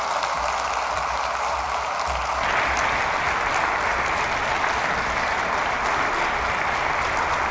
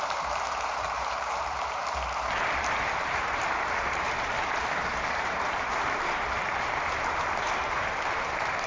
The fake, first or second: second